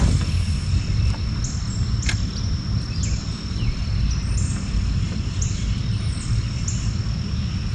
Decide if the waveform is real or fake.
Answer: real